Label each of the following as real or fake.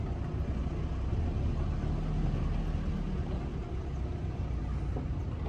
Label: real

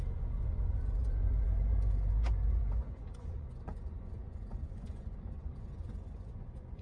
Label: fake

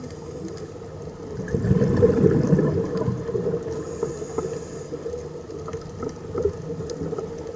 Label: real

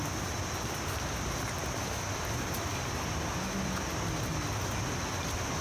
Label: real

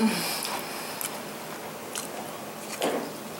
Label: real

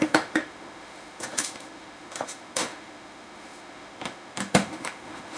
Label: fake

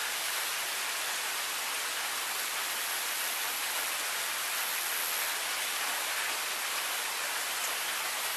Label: real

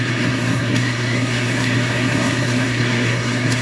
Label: fake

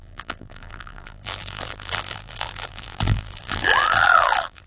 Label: fake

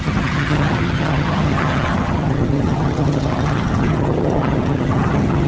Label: fake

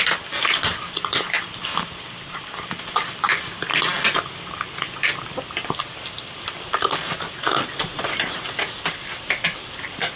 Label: real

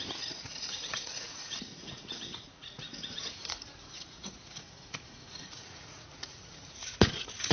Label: fake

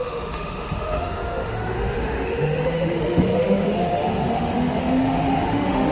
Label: fake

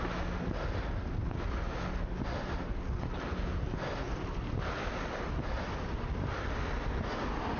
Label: real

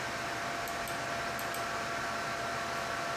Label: real